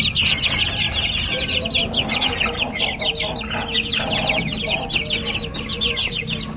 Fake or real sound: real